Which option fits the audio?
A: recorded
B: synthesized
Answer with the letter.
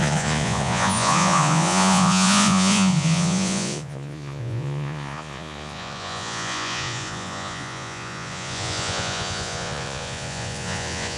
B